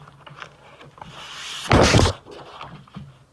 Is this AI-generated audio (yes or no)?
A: no